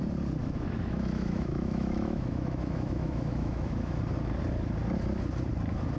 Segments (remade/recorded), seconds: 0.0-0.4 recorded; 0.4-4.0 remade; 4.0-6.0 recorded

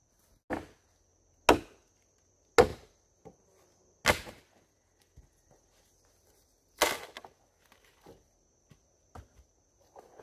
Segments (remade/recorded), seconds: 0.0-10.2 recorded

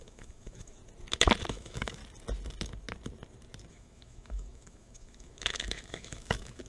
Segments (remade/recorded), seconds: 0.0-0.8 remade; 0.8-1.5 recorded; 1.5-2.0 remade; 2.0-3.7 recorded; 3.7-6.7 remade

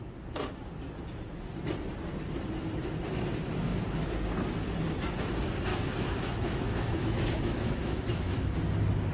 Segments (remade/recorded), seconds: 0.0-5.7 recorded; 5.7-8.5 remade; 8.5-9.1 recorded

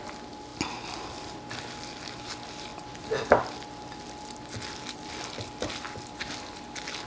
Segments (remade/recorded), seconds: 0.0-7.1 recorded

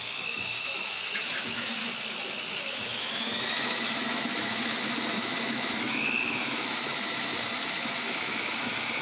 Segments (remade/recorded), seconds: 0.0-1.8 remade; 1.8-2.6 recorded; 2.6-9.0 remade

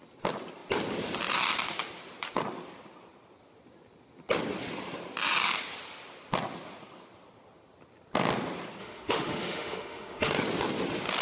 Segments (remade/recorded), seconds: 0.0-8.8 recorded; 8.8-10.3 remade; 10.3-11.2 recorded